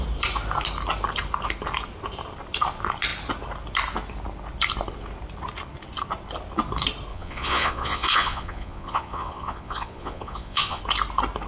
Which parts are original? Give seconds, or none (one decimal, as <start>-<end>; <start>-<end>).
0.0-7.1; 10.8-11.5